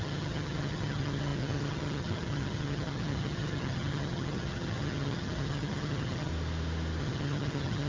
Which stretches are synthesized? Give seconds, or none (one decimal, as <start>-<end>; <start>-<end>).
0.0-6.3; 7.0-7.9